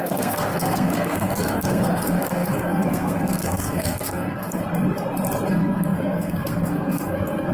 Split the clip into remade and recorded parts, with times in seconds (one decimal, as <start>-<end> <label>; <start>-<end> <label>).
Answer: 0.0-4.6 remade; 4.6-5.5 recorded; 5.5-7.5 remade